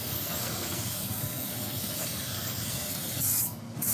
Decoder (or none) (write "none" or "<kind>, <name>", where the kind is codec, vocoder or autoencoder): codec, SNAC